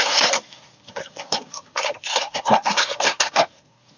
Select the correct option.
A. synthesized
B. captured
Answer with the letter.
A